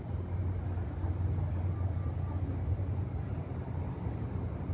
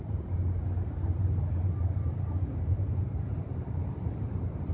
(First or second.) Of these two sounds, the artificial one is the second